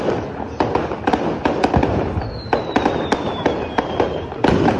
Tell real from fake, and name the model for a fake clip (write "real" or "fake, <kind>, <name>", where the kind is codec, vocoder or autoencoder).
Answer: real